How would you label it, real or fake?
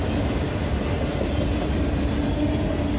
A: real